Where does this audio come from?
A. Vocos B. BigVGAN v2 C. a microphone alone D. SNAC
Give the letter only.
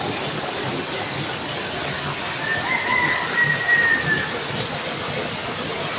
C